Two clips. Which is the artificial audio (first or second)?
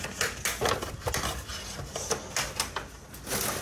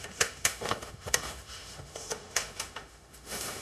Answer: second